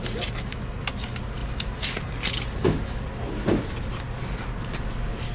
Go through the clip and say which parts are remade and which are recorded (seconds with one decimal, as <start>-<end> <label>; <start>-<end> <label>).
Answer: 0.0-5.3 recorded